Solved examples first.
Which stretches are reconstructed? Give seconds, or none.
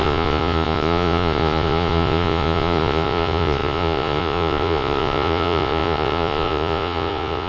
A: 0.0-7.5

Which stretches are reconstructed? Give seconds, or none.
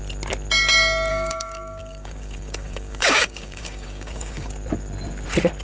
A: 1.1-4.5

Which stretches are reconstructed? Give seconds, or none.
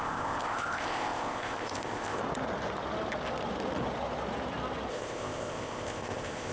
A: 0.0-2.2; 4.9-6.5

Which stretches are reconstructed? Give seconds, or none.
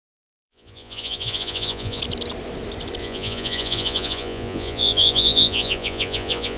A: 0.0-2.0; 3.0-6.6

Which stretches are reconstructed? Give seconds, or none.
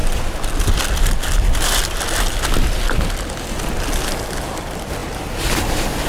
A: none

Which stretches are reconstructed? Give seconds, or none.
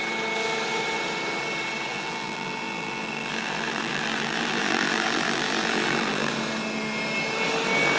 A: 1.9-6.3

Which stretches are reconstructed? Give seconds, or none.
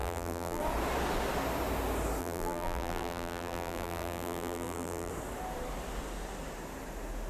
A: 0.0-0.6; 2.2-5.1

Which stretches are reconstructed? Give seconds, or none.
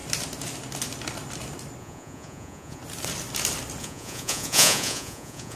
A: 1.8-2.8; 3.8-5.6